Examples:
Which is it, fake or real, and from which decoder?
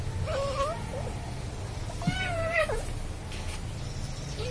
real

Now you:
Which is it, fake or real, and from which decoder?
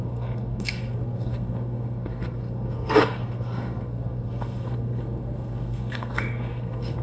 fake, codec, SNAC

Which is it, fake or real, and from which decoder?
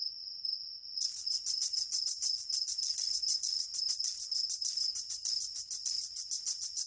real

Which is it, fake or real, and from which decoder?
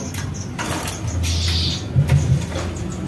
real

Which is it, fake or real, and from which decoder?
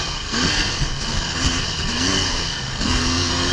fake, codec, SNAC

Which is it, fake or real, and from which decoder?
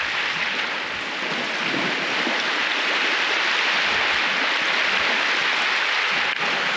real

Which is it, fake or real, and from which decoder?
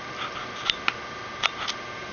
real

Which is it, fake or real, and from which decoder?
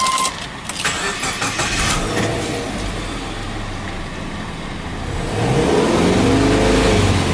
real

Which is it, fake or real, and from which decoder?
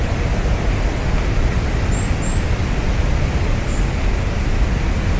real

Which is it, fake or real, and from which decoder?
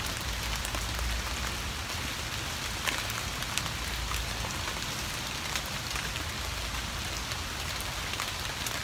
real